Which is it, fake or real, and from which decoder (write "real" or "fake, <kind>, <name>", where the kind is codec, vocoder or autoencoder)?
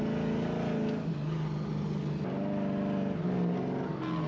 real